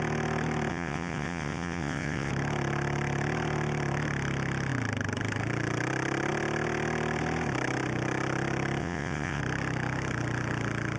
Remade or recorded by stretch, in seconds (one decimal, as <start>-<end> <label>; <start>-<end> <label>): 0.0-0.7 recorded; 0.7-2.3 remade; 2.3-8.8 recorded; 8.8-9.4 remade; 9.4-11.0 recorded